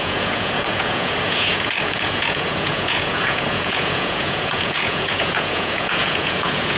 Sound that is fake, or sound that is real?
fake